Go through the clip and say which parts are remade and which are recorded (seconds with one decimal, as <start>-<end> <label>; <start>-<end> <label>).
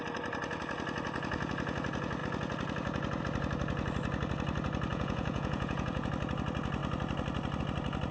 0.0-4.9 recorded; 4.9-6.1 remade; 6.1-8.1 recorded